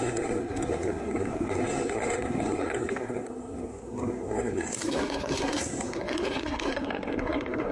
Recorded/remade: remade